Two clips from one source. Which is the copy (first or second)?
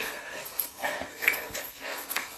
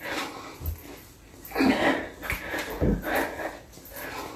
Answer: first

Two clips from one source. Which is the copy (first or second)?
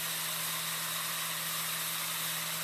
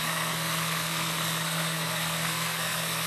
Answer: second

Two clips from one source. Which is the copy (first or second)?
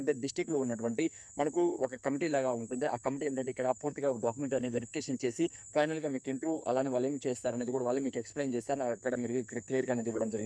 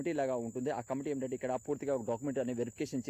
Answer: first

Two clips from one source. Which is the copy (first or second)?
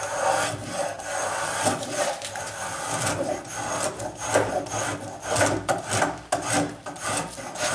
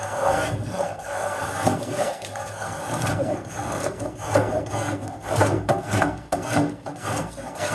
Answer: second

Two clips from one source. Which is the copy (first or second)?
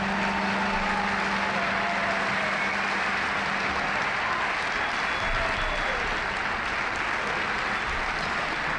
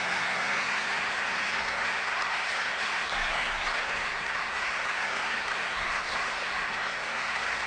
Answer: second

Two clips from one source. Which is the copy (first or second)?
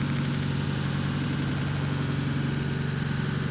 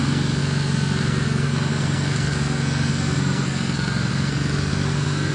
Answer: second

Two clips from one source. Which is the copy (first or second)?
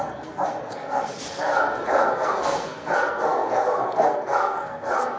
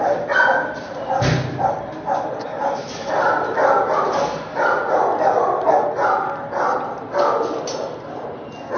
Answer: first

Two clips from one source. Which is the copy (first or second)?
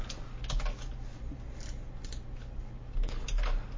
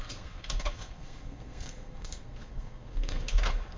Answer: second